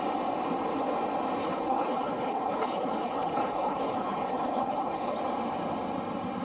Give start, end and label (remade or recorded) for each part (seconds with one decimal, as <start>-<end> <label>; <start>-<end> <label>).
0.0-1.4 recorded; 1.4-5.2 remade; 5.2-6.4 recorded